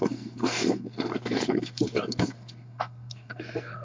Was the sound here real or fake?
fake